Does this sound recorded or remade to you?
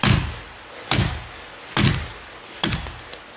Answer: recorded